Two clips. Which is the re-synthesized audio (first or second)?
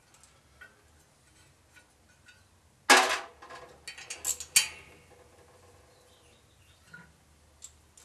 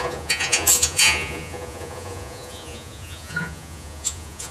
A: second